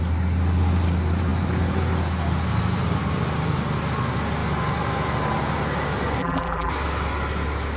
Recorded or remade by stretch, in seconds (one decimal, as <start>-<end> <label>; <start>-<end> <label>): 0.0-6.2 recorded; 6.2-6.7 remade; 6.7-7.8 recorded